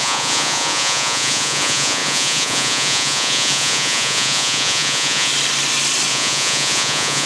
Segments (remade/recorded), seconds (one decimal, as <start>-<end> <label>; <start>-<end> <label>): 0.0-5.3 remade; 5.3-6.1 recorded; 6.1-7.3 remade